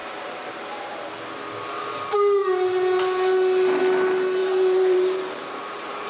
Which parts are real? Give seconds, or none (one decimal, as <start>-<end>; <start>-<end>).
1.1-4.4